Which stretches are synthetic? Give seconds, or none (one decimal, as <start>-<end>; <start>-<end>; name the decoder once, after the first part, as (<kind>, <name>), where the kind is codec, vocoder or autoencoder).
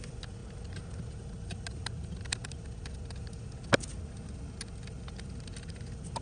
none